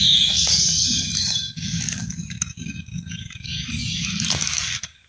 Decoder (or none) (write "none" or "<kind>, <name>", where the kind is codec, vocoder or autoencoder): codec, DAC